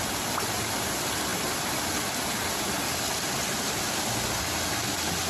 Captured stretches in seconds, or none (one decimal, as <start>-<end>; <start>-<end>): 0.0-5.3